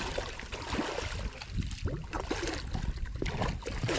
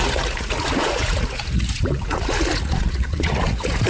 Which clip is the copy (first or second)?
second